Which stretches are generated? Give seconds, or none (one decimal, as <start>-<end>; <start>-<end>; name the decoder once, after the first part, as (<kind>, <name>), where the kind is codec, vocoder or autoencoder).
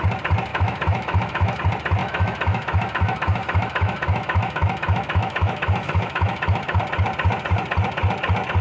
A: 0.5-1.6 (autoencoder, DAC-VAE); 2.0-6.8